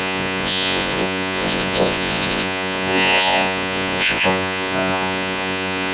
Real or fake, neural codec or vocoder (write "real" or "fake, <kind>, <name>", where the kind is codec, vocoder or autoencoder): fake, vocoder, Vocos